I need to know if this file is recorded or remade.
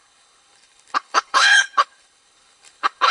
remade